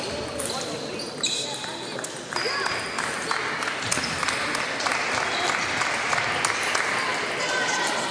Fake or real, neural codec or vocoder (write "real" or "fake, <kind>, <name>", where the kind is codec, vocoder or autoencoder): real